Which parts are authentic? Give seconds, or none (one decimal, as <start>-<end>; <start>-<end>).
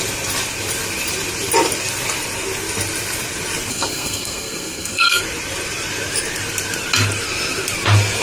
0.0-3.7; 5.2-8.2